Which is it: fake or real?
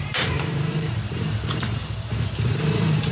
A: fake